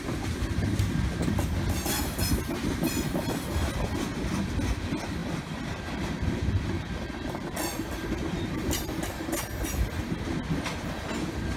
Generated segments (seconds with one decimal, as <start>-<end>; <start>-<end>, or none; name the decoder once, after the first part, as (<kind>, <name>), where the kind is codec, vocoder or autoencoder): 5.2-9.2 (vocoder, BigVGAN v2)